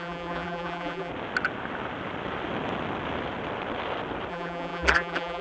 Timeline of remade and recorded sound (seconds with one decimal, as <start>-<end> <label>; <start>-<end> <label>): 0.0-1.1 remade; 1.1-4.3 recorded; 4.3-5.4 remade